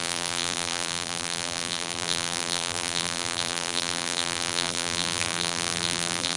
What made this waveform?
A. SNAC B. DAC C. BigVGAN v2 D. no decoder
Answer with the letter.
C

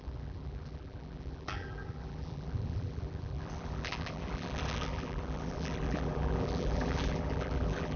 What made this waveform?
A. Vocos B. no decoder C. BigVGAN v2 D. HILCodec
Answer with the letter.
C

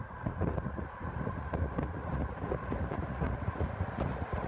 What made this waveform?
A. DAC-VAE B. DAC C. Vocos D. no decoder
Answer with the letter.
C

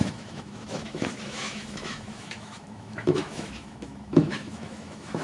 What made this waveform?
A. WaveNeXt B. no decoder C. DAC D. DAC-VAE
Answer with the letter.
D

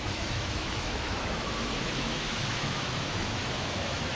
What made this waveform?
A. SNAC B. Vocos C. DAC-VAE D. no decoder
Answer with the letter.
C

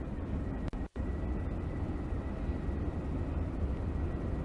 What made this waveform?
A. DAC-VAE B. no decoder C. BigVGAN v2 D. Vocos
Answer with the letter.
B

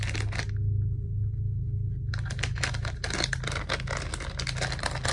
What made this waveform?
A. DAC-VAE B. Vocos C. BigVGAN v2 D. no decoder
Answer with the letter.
D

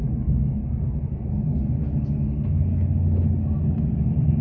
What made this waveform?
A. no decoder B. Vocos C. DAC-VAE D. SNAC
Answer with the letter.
A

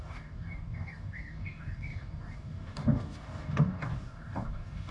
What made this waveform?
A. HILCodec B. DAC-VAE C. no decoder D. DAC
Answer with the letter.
D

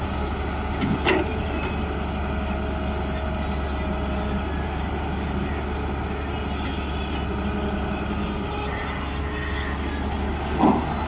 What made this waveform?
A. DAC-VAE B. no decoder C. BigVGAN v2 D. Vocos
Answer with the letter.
B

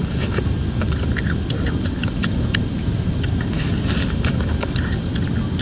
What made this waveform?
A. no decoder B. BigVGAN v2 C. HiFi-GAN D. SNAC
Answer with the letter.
A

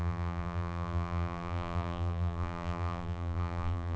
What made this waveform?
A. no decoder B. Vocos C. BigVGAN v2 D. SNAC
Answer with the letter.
C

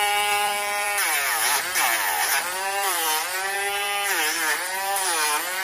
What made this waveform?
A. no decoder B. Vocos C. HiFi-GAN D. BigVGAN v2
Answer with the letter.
D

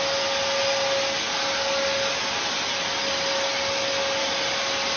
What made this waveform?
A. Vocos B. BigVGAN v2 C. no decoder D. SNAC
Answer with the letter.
C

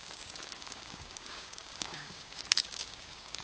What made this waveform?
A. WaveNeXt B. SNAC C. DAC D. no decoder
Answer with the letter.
C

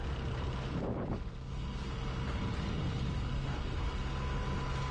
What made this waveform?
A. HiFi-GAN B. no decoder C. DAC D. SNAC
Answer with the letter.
B